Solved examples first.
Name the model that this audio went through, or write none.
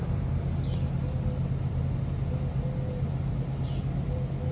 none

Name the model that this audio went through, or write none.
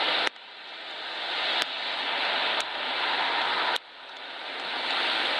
none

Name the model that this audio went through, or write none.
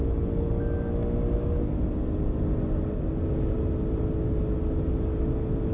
none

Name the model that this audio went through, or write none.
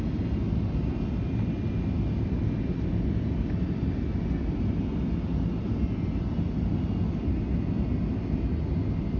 none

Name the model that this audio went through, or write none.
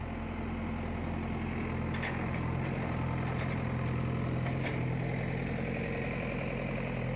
none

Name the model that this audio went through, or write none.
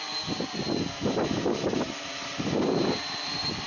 none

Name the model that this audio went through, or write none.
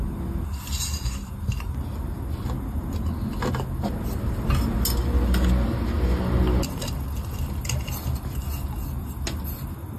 none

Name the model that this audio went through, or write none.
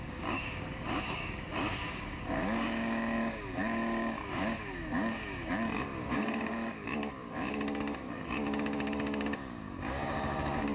codec, DAC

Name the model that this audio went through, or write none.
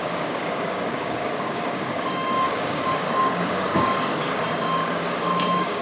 codec, DAC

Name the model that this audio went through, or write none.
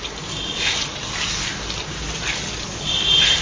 none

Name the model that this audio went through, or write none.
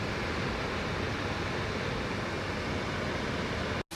none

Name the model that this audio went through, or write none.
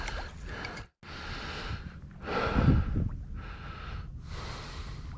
none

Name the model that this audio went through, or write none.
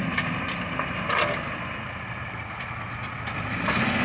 none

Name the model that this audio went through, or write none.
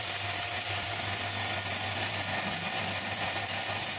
none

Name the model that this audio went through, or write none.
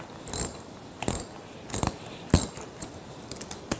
none